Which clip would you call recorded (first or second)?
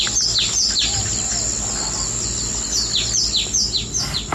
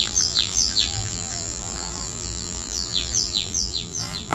first